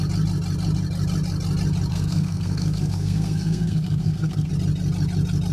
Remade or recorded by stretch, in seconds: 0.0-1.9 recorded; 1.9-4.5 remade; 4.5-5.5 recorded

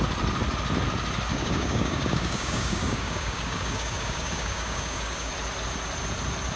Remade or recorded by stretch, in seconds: 0.0-1.3 recorded; 1.3-5.3 remade; 5.3-6.6 recorded

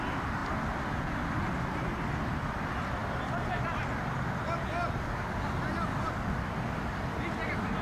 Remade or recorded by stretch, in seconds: 0.0-7.8 recorded

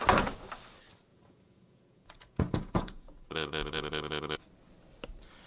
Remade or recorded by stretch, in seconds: 0.0-1.1 recorded; 1.1-4.4 remade; 4.4-5.5 recorded

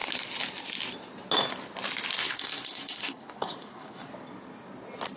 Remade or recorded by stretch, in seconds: 0.0-2.2 recorded; 2.2-4.1 remade; 4.1-5.2 recorded

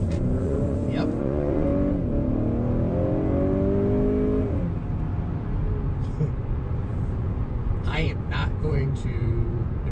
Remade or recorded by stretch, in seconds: 0.0-1.7 remade; 1.7-6.3 recorded; 6.3-9.9 remade

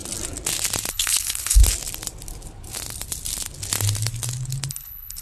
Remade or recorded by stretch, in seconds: 0.0-0.9 recorded; 0.9-1.6 remade; 1.6-4.7 recorded; 4.7-5.2 remade

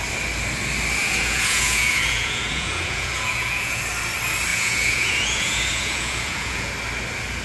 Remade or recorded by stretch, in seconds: 0.0-1.0 recorded; 1.0-3.8 remade; 3.8-4.5 recorded; 4.5-6.7 remade; 6.7-7.4 recorded